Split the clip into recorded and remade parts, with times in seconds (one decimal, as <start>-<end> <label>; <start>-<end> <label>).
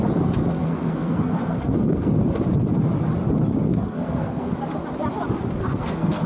0.0-0.4 recorded; 0.4-2.1 remade; 2.1-3.7 recorded; 3.7-4.5 remade; 4.5-5.6 recorded; 5.6-6.3 remade